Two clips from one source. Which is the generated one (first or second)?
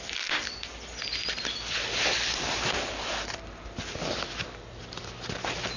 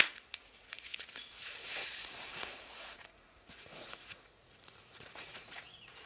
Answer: second